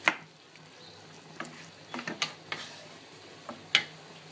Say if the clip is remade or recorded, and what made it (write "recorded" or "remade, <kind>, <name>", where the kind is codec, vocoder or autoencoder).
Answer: recorded